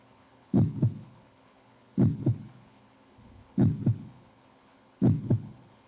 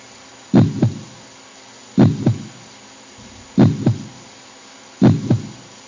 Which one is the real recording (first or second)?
second